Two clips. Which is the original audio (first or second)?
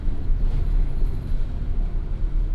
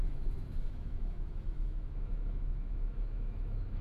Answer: first